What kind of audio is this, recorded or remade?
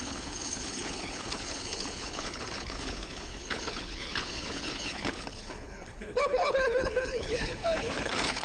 remade